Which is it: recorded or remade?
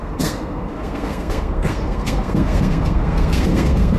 remade